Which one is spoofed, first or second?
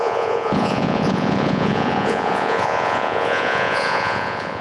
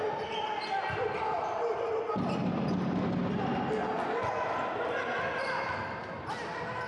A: first